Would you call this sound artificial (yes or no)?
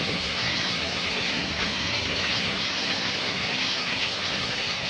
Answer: yes